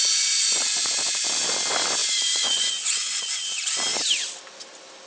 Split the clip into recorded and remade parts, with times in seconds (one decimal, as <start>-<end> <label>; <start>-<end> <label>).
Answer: 0.0-2.0 recorded; 2.0-3.2 remade; 3.2-5.1 recorded